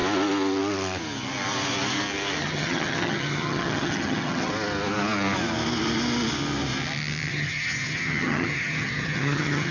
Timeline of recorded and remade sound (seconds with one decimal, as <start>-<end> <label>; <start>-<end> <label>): 0.0-2.4 recorded; 2.4-4.5 remade; 4.5-7.3 recorded; 7.3-9.7 remade